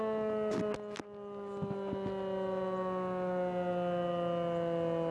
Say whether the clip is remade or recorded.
recorded